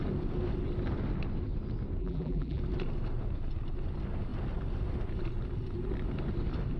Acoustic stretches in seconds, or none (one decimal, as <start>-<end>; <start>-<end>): 0.0-2.0; 2.6-6.8